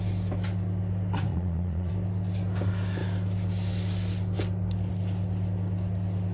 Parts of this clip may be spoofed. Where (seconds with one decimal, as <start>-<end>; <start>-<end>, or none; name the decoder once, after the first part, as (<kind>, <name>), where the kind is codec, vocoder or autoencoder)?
1.3-1.9 (vocoder, Vocos)